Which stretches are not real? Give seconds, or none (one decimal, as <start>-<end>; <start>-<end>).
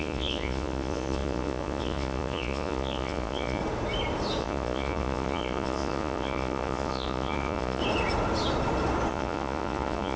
0.0-3.6; 4.4-7.8; 9.1-10.2